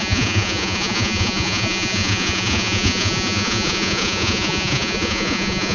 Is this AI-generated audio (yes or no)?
yes